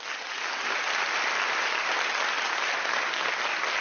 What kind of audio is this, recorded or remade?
recorded